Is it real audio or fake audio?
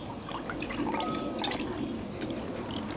real